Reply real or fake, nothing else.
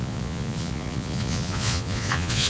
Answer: fake